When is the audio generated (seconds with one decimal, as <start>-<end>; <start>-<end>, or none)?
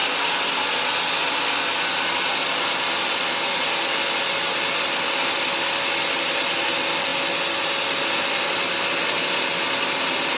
none